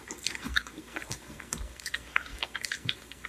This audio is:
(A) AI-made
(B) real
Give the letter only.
A